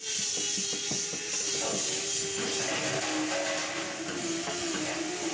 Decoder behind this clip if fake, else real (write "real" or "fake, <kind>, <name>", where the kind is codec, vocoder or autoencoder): real